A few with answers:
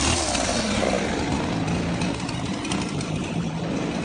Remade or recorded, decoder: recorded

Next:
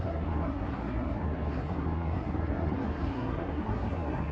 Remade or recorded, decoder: remade, codec, SNAC